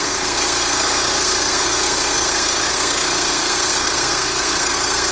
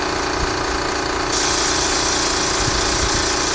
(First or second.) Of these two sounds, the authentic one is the second